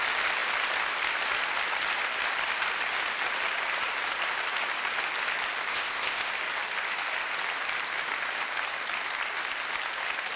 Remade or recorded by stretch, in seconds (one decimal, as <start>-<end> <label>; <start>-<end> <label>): 0.0-5.7 recorded; 5.7-6.3 remade; 6.3-10.4 recorded